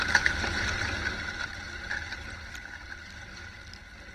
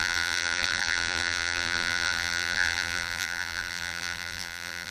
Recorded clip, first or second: first